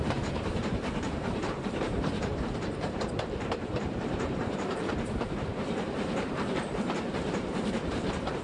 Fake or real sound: fake